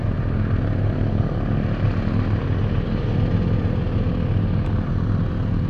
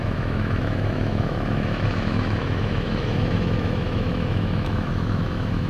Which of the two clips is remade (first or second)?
second